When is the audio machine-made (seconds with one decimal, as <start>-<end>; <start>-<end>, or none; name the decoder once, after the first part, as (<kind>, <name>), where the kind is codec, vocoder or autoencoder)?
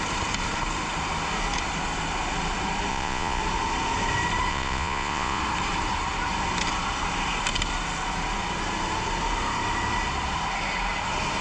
2.9-3.4 (vocoder, Vocos); 4.5-5.4